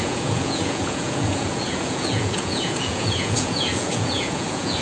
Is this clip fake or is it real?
fake